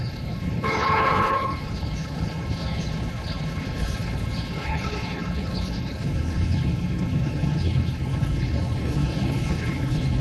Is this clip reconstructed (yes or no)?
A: yes